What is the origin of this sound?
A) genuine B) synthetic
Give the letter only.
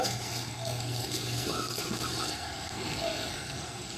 B